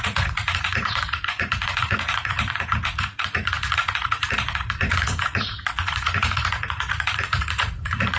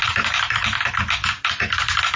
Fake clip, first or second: first